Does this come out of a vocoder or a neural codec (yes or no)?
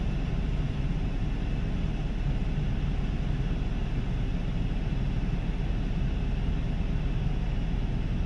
yes